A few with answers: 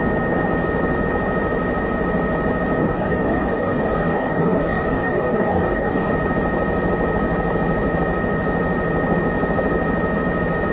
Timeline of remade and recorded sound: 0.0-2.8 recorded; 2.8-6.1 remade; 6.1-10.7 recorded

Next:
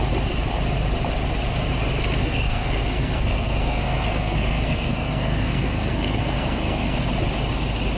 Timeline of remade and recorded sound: 0.0-2.2 recorded; 2.2-7.0 remade; 7.0-8.0 recorded